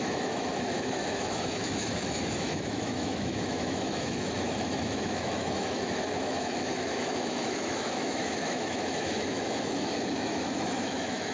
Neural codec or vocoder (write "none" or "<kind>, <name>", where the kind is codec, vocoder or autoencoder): autoencoder, DAC-VAE